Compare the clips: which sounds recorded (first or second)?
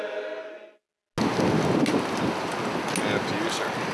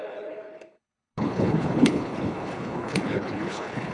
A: first